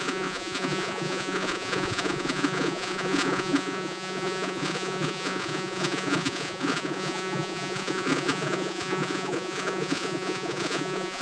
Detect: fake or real fake